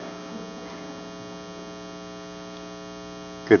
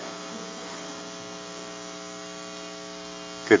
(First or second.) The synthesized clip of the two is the second